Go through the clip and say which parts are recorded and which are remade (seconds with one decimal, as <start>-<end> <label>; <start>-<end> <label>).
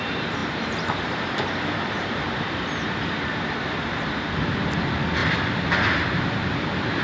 0.0-5.2 remade; 5.2-6.1 recorded; 6.1-7.0 remade